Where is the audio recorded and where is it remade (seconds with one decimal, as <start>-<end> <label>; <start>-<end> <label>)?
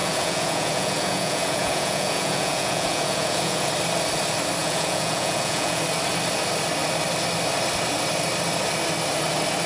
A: 0.0-3.7 remade; 3.7-4.6 recorded; 4.6-5.8 remade; 5.8-9.7 recorded